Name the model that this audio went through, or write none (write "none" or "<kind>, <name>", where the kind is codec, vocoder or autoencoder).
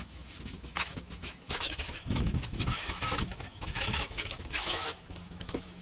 autoencoder, DAC-VAE